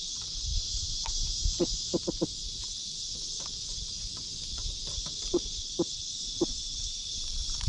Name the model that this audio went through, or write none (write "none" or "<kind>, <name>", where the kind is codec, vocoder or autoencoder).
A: vocoder, BigVGAN v2